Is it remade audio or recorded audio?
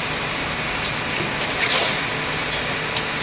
recorded